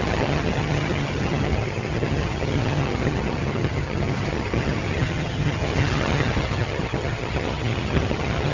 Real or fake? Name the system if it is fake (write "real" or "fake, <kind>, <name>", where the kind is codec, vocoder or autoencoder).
fake, vocoder, HiFi-GAN